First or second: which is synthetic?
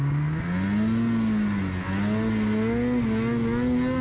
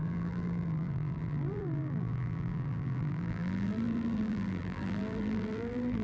second